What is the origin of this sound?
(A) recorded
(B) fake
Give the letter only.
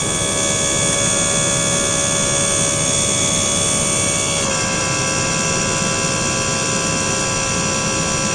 A